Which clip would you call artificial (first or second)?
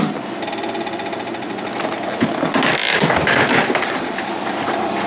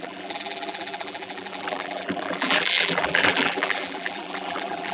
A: second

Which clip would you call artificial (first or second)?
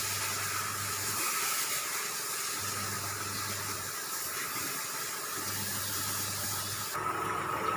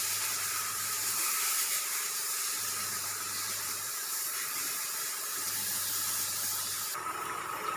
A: second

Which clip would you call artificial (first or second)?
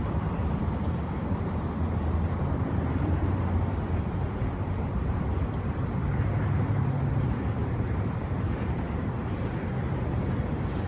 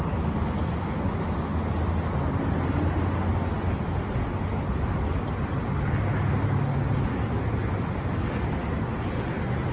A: first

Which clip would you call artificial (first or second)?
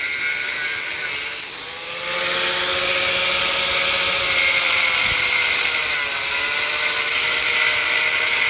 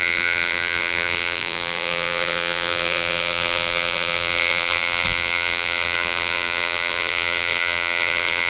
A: second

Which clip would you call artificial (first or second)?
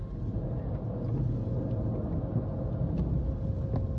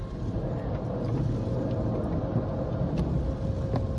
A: second